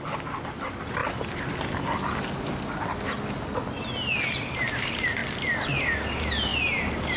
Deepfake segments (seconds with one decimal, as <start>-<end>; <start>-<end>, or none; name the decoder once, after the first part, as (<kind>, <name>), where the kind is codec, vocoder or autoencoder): 0.0-1.0 (vocoder, BigVGAN v2); 4.4-5.2; 5.8-7.2